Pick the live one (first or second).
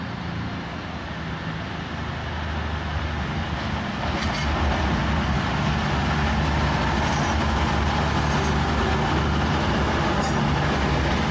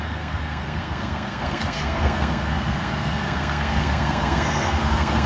first